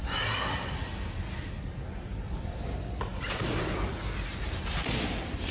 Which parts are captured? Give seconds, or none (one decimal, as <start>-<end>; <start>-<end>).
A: 0.0-5.5

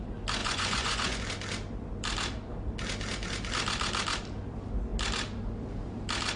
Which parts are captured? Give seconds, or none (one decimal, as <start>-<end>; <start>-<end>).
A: 0.0-0.4; 1.2-6.4

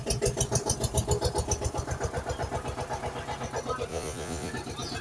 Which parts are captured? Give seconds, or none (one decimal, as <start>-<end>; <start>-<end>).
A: 0.0-3.9; 4.5-5.0

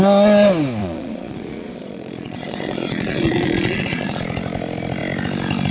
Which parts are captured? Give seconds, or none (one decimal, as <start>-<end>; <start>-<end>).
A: 0.0-0.8; 4.2-5.7

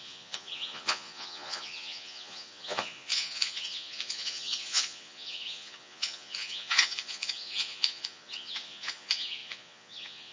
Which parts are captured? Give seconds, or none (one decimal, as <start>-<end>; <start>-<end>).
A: none

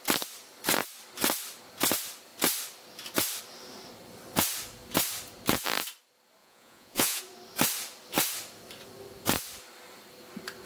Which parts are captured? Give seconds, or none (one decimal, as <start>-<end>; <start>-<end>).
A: 0.0-6.4; 7.2-10.7

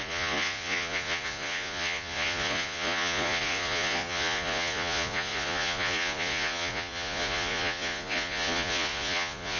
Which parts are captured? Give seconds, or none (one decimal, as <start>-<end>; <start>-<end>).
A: none